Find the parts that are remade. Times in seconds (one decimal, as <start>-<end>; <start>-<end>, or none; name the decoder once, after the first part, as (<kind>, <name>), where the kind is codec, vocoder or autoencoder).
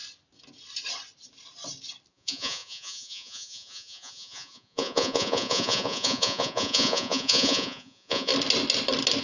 2.1-8.3 (vocoder, Vocos)